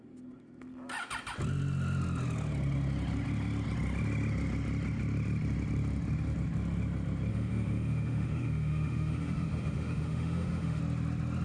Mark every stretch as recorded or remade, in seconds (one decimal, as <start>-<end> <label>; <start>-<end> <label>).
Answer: 0.0-7.3 recorded; 7.3-10.8 remade; 10.8-11.4 recorded